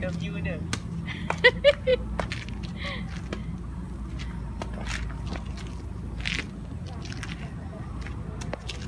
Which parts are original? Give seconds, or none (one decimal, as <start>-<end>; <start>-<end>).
0.0-8.9